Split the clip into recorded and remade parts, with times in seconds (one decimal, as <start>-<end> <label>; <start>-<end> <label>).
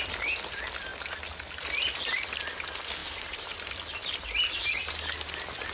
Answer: 0.0-3.0 recorded; 3.0-3.7 remade; 3.7-5.7 recorded